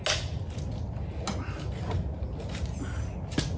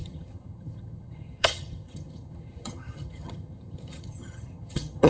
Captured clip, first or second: first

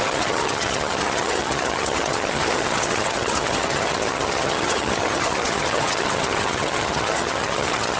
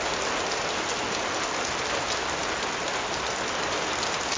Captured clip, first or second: second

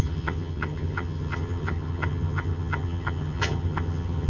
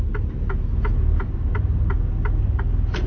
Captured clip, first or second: second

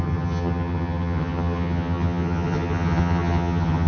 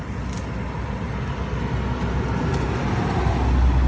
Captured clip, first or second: second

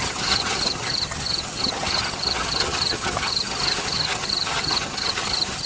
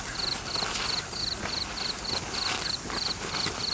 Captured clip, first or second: second